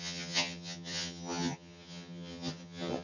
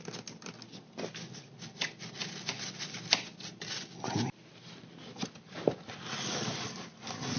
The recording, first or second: second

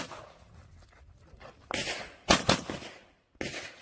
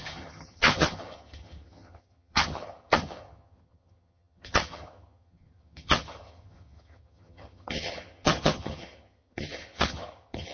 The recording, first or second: first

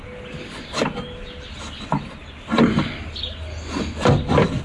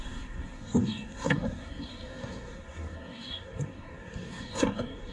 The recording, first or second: first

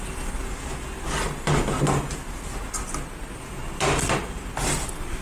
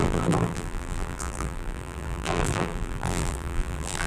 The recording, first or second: first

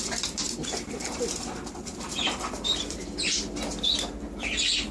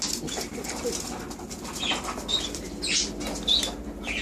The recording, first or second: second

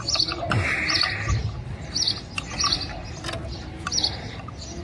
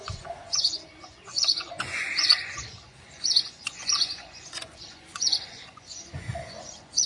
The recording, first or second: first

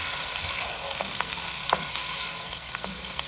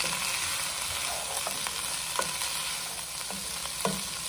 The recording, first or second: second